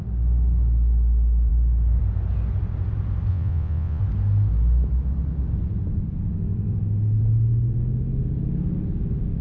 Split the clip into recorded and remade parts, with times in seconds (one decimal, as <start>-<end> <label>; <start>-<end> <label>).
0.0-3.3 recorded; 3.3-4.0 remade; 4.0-9.4 recorded

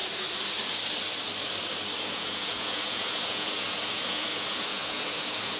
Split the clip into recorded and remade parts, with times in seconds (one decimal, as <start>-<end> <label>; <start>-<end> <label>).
0.0-2.0 recorded; 2.0-5.6 remade